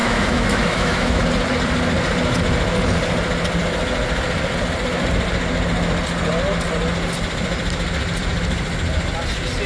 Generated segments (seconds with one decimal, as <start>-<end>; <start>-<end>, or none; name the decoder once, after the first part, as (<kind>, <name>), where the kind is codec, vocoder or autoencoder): 0.0-1.2 (autoencoder, DAC-VAE)